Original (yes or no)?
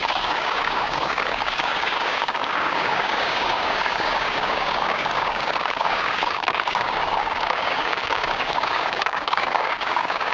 no